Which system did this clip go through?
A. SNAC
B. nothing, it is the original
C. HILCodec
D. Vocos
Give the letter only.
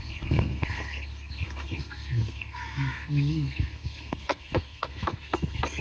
A